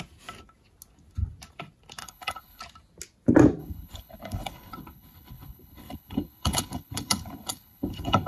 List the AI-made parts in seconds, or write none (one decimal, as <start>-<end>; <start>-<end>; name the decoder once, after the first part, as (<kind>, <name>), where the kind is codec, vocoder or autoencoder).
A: 2.0-2.6 (codec, HILCodec); 3.6-8.3